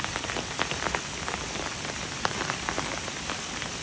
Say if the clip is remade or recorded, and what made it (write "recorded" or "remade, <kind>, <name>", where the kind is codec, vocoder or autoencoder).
recorded